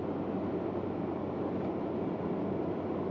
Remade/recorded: recorded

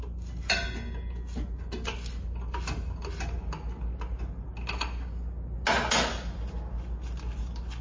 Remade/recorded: recorded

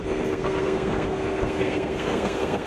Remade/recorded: remade